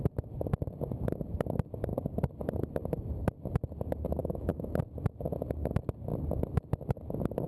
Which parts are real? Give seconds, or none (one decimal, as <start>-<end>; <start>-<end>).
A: 0.0-4.2; 4.8-7.5